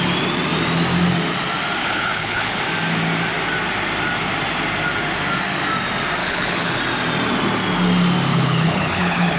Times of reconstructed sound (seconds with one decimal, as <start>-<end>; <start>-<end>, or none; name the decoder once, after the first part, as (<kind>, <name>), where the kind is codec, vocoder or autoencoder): 1.8-2.6 (codec, HILCodec); 6.2-6.8; 8.3-9.4